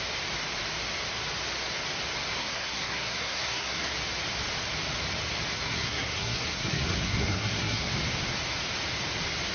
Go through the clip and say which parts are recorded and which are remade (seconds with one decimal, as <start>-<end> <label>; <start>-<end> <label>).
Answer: 0.0-2.3 recorded; 2.3-3.9 remade; 3.9-5.5 recorded; 5.5-7.9 remade; 7.9-9.5 recorded